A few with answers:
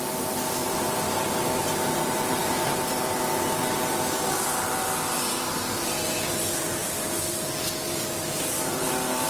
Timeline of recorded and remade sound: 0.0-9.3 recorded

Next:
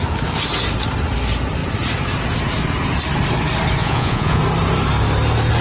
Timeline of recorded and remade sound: 0.0-3.8 recorded; 3.8-4.4 remade; 4.4-5.6 recorded

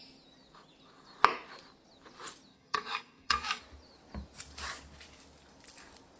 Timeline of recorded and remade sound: 0.0-2.5 recorded; 2.5-3.6 remade; 3.6-6.2 recorded